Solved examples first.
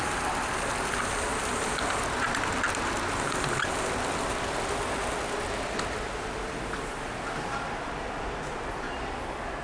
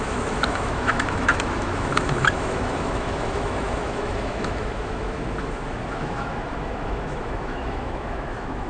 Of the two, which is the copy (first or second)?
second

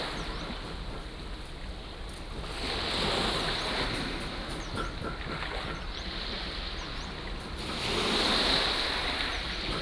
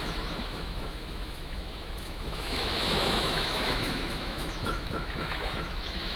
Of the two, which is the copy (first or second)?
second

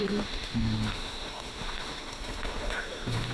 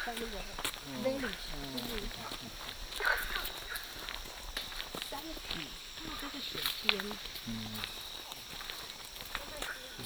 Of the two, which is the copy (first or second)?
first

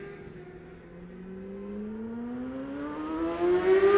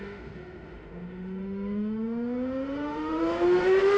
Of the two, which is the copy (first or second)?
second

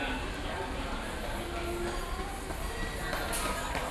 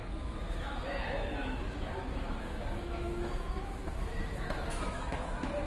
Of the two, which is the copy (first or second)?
second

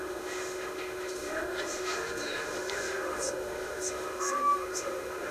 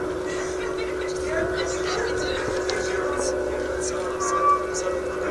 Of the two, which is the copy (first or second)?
first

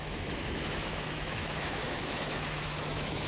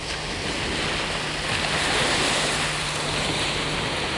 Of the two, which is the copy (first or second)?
first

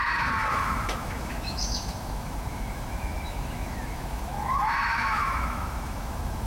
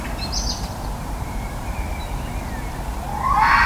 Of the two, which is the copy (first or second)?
first